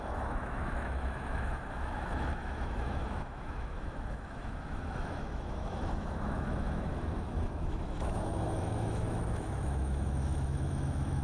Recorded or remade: remade